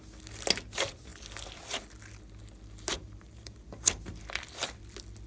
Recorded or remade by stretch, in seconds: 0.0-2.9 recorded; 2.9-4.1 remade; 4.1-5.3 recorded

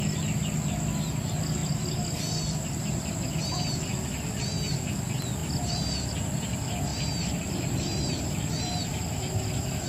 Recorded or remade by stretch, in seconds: 0.0-6.9 recorded; 6.9-8.6 remade; 8.6-9.9 recorded

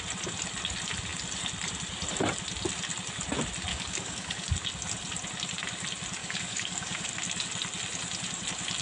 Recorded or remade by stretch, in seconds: 0.0-3.7 recorded; 3.7-4.5 remade; 4.5-6.2 recorded; 6.2-7.1 remade; 7.1-8.8 recorded

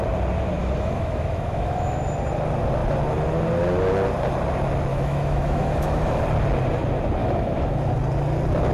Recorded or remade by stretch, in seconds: 0.0-0.6 recorded; 0.6-2.0 remade; 2.0-4.9 recorded; 4.9-6.2 remade; 6.2-7.2 recorded; 7.2-7.9 remade; 7.9-8.7 recorded